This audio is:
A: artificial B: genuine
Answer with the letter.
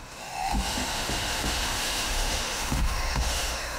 A